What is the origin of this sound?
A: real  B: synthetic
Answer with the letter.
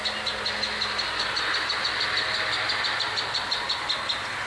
A